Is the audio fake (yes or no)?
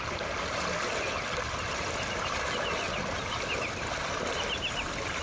no